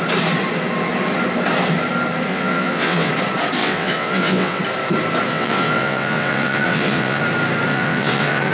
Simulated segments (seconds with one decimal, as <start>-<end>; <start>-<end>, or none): 2.3-3.1; 3.6-4.6; 5.3-7.2; 7.7-8.5